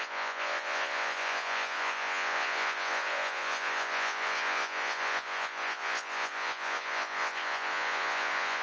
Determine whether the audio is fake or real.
fake